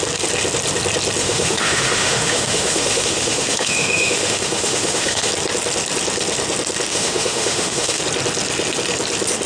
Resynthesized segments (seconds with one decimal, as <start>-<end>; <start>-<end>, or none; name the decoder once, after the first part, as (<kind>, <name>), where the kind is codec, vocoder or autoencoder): 1.2-5.3 (autoencoder, DAC-VAE); 6.9-8.0